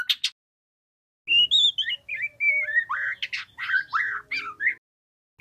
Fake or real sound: real